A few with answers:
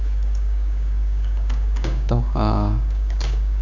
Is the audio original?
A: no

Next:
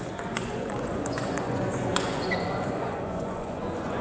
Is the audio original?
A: no